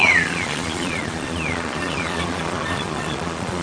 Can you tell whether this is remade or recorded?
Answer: remade